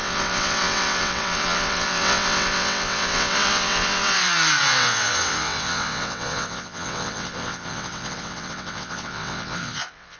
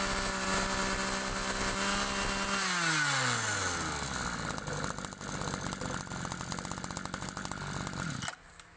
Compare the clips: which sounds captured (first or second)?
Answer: second